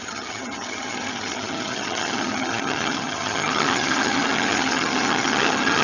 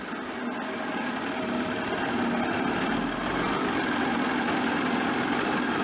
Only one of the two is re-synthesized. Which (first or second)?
first